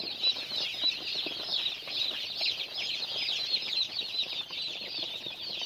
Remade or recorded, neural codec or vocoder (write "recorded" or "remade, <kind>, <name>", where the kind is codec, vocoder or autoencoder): recorded